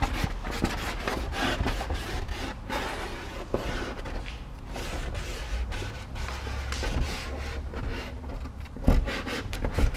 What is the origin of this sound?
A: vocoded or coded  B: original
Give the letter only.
B